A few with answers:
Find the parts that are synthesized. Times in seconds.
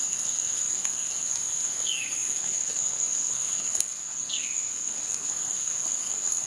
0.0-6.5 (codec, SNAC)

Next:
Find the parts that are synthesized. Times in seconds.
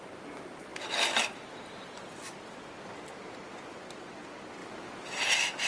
none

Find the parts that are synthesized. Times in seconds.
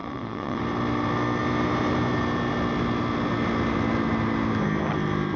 0.0-0.6 (vocoder, Vocos)